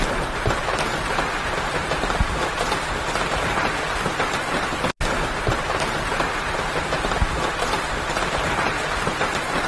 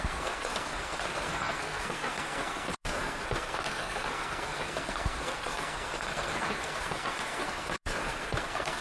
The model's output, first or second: second